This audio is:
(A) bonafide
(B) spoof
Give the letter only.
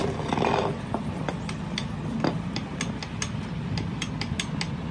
A